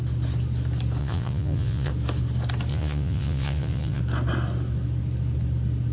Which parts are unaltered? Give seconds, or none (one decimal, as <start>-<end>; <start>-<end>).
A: 0.0-1.0; 1.9-2.7; 4.0-5.9